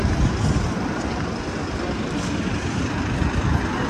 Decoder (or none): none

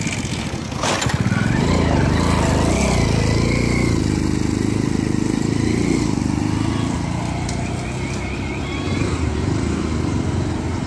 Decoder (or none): none